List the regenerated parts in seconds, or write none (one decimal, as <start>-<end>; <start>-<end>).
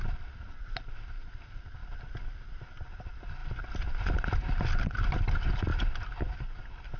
none